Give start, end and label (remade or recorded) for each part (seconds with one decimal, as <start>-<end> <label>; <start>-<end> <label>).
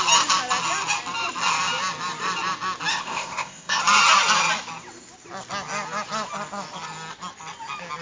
0.0-2.9 recorded; 2.9-3.8 remade; 3.8-8.0 recorded